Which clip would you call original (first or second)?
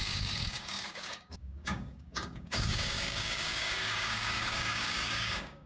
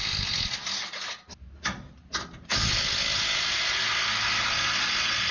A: second